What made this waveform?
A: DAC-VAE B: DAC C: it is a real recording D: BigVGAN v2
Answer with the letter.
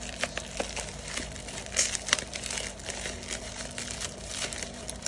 D